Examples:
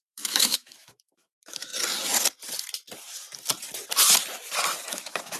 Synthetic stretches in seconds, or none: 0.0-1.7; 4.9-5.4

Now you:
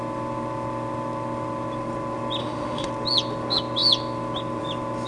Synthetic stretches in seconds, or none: 2.4-2.9

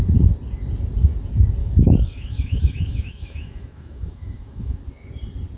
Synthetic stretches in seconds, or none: 1.6-4.8

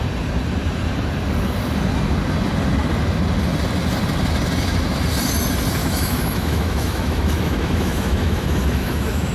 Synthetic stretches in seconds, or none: 5.8-9.3

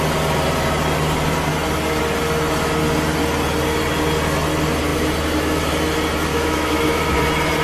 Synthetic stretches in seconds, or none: 6.3-7.0